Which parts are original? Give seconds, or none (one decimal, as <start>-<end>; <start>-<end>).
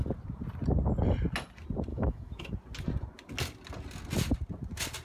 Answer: 0.0-1.9; 2.5-5.0